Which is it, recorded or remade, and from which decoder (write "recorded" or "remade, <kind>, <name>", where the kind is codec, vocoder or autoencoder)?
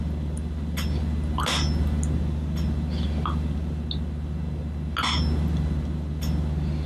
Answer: recorded